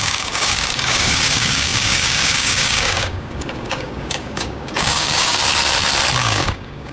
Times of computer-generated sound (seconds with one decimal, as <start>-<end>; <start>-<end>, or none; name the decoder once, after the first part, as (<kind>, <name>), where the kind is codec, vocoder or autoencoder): 0.0-5.4 (codec, DAC); 6.2-6.9